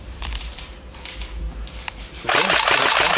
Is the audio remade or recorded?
remade